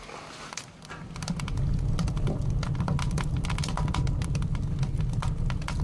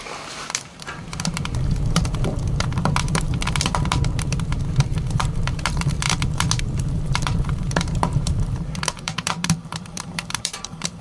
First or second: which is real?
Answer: first